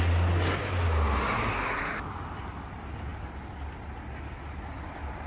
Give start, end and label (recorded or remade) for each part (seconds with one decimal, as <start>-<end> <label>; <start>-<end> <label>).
0.0-5.3 recorded